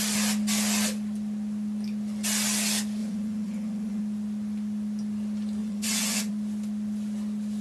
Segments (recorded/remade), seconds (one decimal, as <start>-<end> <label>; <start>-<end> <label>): 0.0-3.0 recorded; 3.0-4.0 remade; 4.0-5.6 recorded; 5.6-6.3 remade; 6.3-7.6 recorded